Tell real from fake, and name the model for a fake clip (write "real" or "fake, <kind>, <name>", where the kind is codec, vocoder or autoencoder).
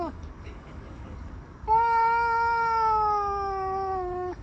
fake, codec, DAC